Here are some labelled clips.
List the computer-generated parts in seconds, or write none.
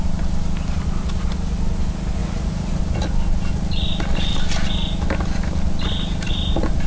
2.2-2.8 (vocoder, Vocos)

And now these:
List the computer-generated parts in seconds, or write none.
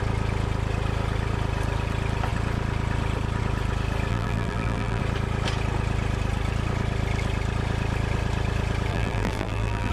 4.1-5.0 (vocoder, BigVGAN v2); 8.9-9.9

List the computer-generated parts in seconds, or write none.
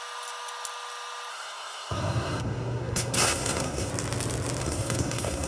1.3-3.9 (codec, SNAC); 4.6-5.5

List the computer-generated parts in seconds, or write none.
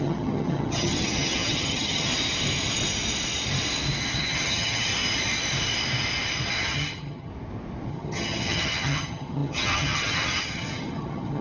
0.0-2.1 (vocoder, HiFi-GAN); 4.0-4.9; 6.5-7.3; 7.9-11.4